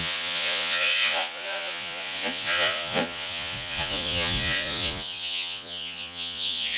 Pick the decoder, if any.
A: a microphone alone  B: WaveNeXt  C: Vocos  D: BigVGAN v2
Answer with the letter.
C